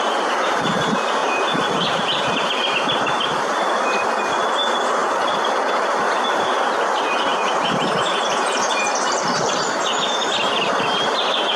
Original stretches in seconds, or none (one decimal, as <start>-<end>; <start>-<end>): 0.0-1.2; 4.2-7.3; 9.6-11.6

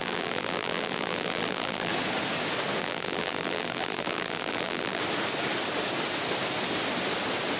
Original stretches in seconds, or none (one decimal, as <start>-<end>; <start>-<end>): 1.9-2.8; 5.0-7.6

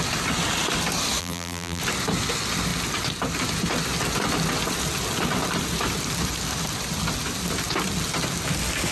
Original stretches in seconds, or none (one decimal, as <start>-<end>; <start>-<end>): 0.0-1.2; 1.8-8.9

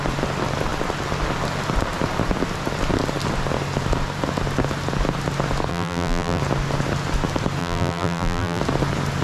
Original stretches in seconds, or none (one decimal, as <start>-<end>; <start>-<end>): 0.0-5.7; 6.4-7.6; 8.6-9.2